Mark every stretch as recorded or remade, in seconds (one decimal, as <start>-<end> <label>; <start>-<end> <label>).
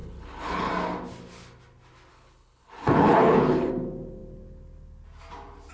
0.0-0.7 remade; 0.7-2.1 recorded; 2.1-3.7 remade; 3.7-5.7 recorded